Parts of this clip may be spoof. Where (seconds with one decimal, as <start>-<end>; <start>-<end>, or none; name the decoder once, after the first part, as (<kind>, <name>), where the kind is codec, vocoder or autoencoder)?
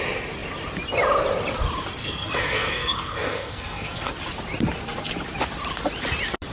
2.0-4.1 (codec, SNAC)